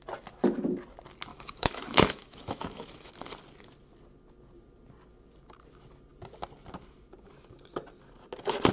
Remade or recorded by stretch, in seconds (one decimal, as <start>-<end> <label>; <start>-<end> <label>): 0.0-1.3 recorded; 1.3-3.1 remade; 3.1-8.7 recorded